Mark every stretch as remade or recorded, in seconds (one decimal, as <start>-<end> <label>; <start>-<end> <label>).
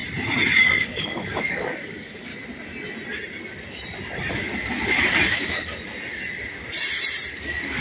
0.0-0.6 recorded; 0.6-2.3 remade; 2.3-4.3 recorded; 4.3-5.7 remade; 5.7-7.3 recorded; 7.3-7.8 remade